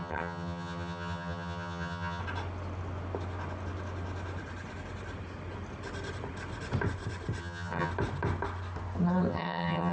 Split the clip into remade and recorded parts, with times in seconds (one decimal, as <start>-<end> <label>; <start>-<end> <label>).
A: 0.0-2.2 remade; 2.2-7.4 recorded; 7.4-7.9 remade; 7.9-9.3 recorded; 9.3-9.9 remade